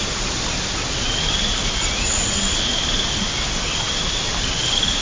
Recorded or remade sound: recorded